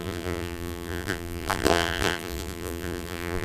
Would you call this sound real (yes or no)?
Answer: no